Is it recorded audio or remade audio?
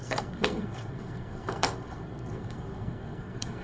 remade